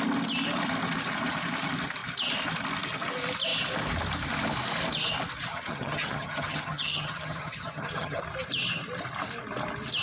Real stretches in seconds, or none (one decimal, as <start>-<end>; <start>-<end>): 0.0-5.5; 8.2-10.0